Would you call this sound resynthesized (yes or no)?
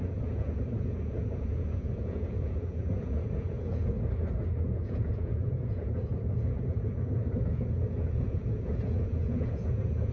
yes